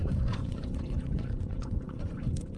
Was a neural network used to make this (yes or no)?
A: yes